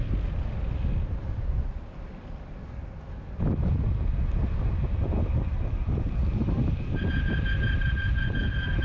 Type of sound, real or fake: real